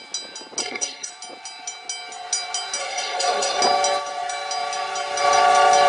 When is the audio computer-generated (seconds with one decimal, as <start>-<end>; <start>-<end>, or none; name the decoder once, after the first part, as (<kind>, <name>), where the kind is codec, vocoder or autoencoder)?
0.6-1.1 (codec, SNAC); 2.8-3.6